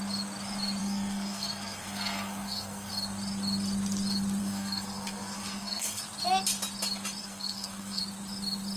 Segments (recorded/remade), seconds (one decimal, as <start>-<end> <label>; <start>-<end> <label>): 0.0-0.8 recorded; 0.8-2.9 remade; 2.9-4.4 recorded; 4.4-6.0 remade; 6.0-7.2 recorded; 7.2-8.0 remade; 8.0-8.8 recorded